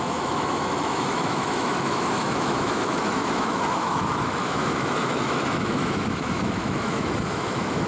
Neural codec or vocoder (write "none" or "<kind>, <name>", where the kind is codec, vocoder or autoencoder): autoencoder, DAC-VAE